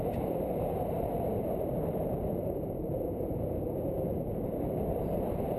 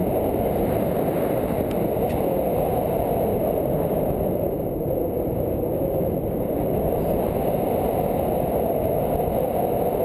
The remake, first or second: first